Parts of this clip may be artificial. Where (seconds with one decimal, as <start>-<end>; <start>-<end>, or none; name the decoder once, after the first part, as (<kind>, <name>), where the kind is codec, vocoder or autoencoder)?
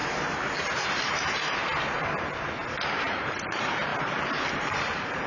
0.6-1.6 (vocoder, BigVGAN v2); 2.9-3.9; 4.5-5.3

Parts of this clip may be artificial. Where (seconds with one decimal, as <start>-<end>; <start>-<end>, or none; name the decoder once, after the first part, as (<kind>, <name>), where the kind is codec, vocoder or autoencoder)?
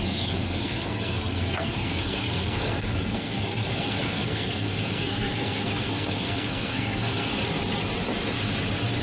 0.0-7.3 (codec, SNAC)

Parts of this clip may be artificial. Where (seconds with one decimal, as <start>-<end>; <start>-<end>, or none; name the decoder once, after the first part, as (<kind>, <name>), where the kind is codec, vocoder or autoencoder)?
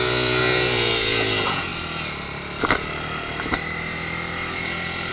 0.0-1.7 (vocoder, Vocos)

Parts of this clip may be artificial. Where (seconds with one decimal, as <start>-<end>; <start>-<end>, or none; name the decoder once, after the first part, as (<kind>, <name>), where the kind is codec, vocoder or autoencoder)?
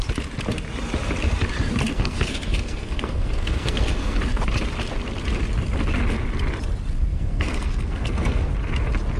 1.9-4.2 (codec, SNAC); 7.1-8.5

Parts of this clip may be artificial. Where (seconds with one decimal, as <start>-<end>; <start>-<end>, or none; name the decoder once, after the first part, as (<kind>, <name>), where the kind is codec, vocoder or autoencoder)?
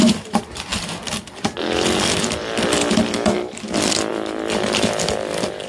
0.0-5.7 (vocoder, BigVGAN v2)